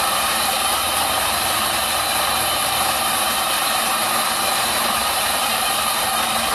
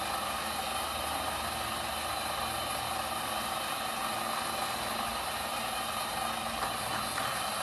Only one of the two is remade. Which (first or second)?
first